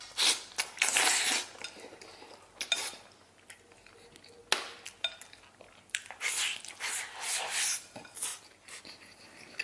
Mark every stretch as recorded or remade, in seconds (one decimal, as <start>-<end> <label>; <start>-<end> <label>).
0.0-8.3 recorded; 8.3-8.8 remade; 8.8-9.6 recorded